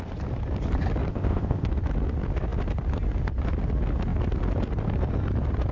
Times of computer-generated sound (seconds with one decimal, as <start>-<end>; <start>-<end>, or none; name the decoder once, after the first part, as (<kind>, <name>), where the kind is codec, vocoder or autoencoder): 1.1-1.7 (codec, ZipCodec)